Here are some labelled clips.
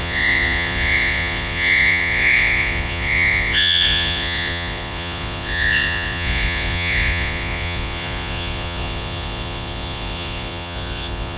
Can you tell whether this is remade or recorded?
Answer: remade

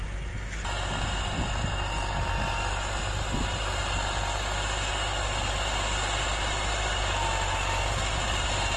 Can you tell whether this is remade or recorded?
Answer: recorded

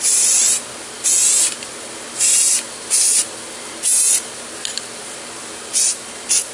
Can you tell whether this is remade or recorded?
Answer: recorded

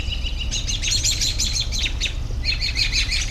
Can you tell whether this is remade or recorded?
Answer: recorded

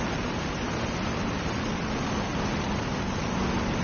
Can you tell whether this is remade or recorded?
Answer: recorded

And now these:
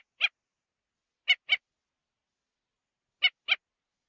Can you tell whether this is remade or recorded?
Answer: recorded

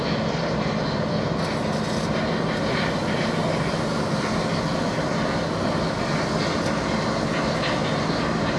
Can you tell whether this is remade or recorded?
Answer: recorded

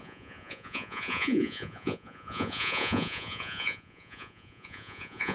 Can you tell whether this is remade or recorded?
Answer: remade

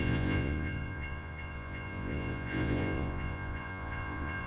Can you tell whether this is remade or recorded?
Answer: remade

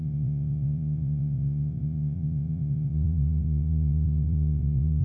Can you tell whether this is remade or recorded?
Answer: remade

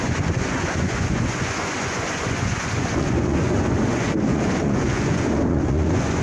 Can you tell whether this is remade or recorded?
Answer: remade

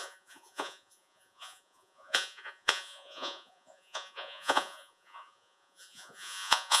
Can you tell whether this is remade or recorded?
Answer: remade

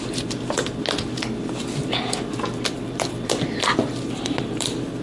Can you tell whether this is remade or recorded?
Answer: recorded